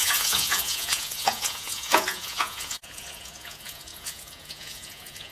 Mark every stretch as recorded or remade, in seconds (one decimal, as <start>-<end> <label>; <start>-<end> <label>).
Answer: 0.0-5.3 remade